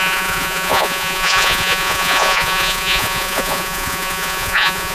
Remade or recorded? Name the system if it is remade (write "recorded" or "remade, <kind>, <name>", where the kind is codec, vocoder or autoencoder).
remade, vocoder, Vocos